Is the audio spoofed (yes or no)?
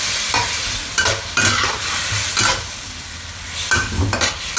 no